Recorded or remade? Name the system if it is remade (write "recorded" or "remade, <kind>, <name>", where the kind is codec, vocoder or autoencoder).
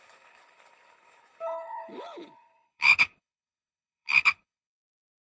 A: remade, codec, HILCodec